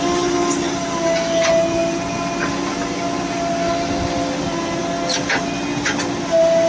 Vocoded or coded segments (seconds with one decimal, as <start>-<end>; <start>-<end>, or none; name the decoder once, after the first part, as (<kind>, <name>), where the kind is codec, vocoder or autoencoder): none